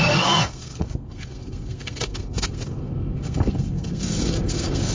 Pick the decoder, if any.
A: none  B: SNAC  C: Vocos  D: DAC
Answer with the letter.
B